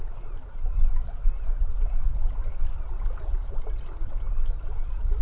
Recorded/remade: recorded